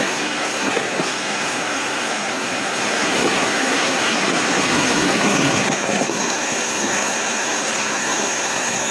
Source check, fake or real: fake